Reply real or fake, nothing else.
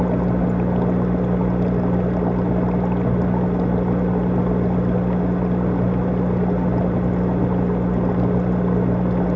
real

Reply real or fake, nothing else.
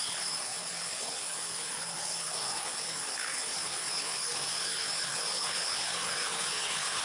fake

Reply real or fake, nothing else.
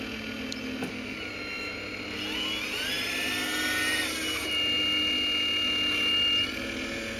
real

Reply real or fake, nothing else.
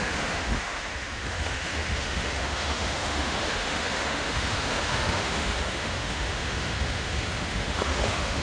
fake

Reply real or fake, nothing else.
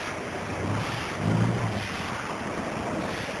real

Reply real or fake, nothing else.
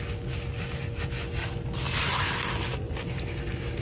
real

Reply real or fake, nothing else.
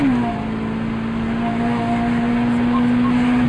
real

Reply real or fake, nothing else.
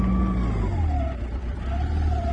real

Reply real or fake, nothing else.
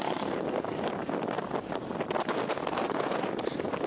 real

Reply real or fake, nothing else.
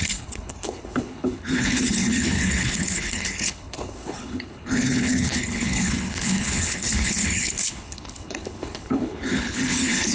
fake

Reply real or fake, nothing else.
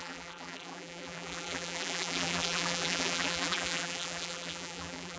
fake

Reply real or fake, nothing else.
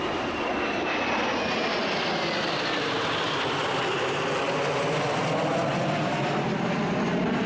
real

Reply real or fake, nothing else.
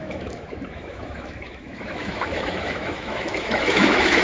fake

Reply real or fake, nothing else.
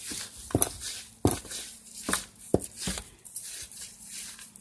real